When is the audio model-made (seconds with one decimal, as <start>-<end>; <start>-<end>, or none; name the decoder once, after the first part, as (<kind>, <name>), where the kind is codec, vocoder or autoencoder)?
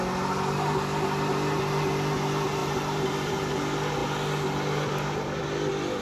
2.6-3.5 (vocoder, BigVGAN v2)